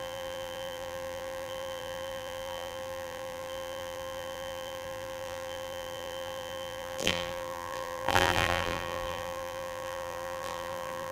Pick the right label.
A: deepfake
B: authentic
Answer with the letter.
A